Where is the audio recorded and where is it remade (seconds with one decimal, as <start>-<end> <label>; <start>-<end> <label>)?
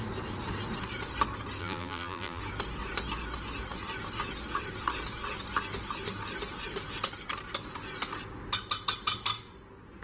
0.0-1.6 recorded; 1.6-2.4 remade; 2.4-10.0 recorded